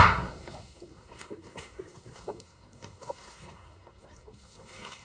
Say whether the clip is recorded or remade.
remade